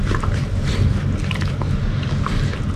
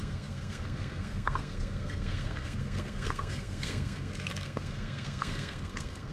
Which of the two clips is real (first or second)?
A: first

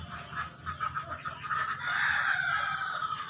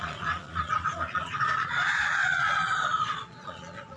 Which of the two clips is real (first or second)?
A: first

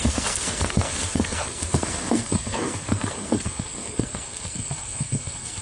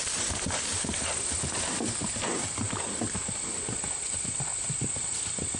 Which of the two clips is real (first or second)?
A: second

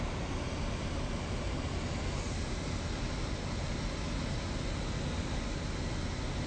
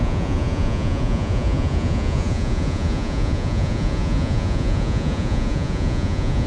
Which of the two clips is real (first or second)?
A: first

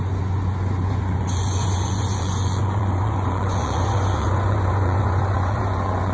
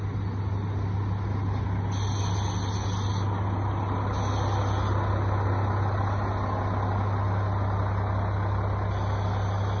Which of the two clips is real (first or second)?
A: second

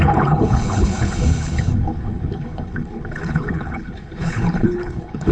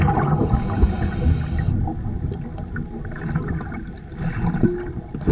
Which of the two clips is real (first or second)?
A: second